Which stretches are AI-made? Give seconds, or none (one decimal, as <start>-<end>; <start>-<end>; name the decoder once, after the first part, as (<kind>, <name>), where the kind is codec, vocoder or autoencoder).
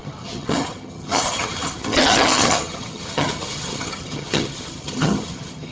0.0-5.7 (vocoder, HiFi-GAN)